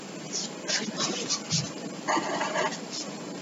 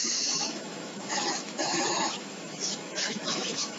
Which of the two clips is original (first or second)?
first